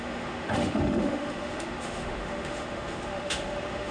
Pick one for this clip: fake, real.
fake